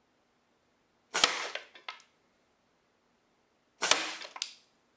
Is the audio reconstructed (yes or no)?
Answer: no